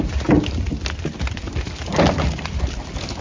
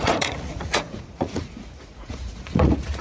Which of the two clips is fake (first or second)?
second